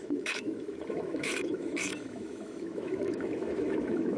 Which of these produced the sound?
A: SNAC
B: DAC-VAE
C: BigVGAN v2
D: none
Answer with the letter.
B